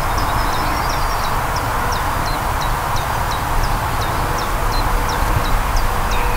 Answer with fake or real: real